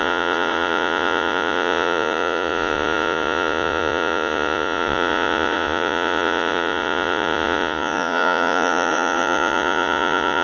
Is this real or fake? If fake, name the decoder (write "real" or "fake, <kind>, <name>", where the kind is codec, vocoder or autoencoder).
fake, vocoder, Vocos